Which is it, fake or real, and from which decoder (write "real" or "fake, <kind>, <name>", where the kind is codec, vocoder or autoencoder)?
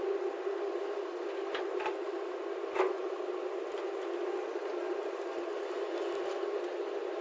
real